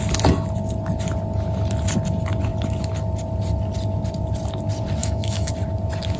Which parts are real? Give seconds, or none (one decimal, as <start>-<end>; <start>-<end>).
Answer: 0.0-5.0; 5.5-6.2